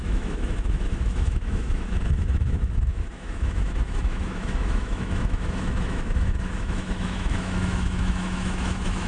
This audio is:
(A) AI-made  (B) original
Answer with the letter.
A